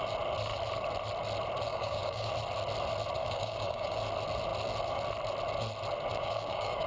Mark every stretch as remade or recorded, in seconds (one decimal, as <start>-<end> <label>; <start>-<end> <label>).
0.0-1.7 recorded; 1.7-2.3 remade; 2.3-3.2 recorded; 3.2-4.0 remade; 4.0-6.1 recorded; 6.1-6.9 remade